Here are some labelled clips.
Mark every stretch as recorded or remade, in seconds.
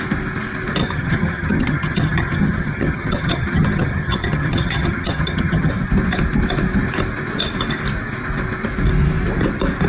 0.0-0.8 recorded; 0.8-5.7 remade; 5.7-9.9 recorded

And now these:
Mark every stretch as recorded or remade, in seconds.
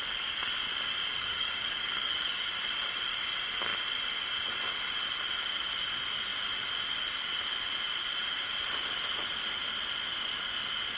0.0-1.1 recorded; 1.1-2.5 remade; 2.5-11.0 recorded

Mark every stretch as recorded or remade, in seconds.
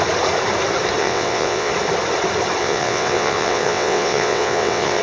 0.0-1.0 recorded; 1.0-1.7 remade; 1.7-2.6 recorded; 2.6-5.0 remade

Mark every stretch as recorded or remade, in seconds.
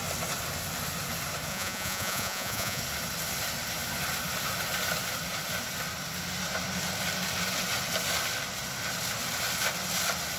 0.0-1.5 recorded; 1.5-2.8 remade; 2.8-10.4 recorded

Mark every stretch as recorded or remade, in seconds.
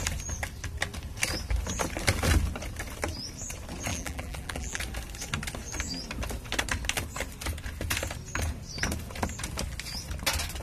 0.0-3.9 recorded; 3.9-4.8 remade; 4.8-10.6 recorded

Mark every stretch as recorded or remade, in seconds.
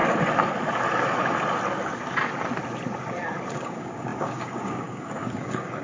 0.0-3.5 recorded; 3.5-5.8 remade